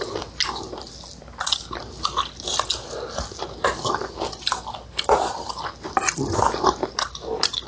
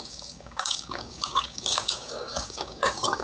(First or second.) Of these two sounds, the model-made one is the second